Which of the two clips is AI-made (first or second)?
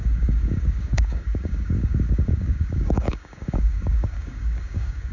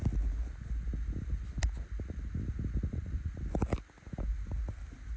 first